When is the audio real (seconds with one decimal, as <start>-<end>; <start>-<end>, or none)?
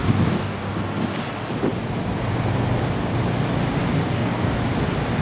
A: 0.7-4.0; 4.6-5.2